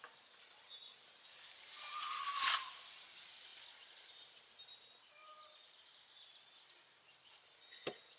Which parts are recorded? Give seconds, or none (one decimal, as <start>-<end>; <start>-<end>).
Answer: 0.0-8.2